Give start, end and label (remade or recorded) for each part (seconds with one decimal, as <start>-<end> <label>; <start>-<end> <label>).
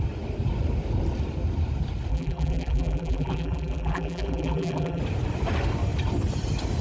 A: 0.0-2.1 recorded; 2.1-5.0 remade; 5.0-6.8 recorded